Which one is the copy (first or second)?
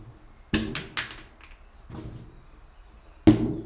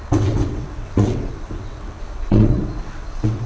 second